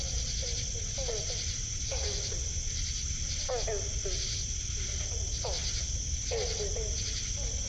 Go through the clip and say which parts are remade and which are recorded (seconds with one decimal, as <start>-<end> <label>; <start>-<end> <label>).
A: 0.0-7.7 recorded